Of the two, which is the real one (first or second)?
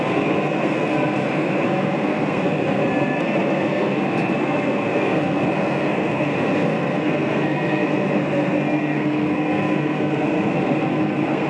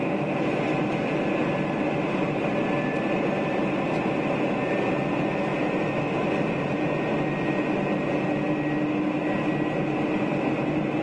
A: second